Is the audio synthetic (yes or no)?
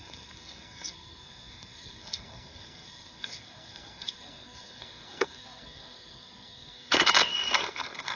yes